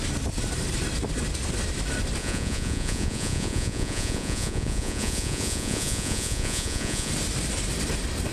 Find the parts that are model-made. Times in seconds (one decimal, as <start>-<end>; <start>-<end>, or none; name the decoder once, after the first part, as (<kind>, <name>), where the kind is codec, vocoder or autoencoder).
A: 2.2-7.1 (vocoder, Vocos)